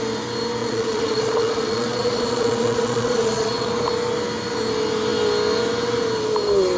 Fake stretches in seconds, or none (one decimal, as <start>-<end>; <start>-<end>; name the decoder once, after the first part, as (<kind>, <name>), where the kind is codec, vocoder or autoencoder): 0.6-3.7 (vocoder, Vocos)